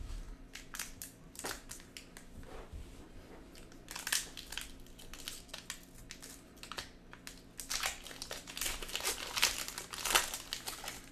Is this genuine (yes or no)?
yes